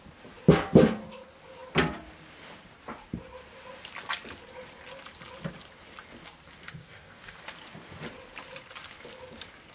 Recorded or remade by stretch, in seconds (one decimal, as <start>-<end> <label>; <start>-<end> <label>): 0.0-6.8 recorded; 6.8-7.4 remade; 7.4-9.7 recorded